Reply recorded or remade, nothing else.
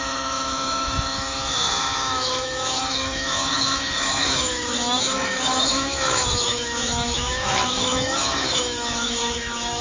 remade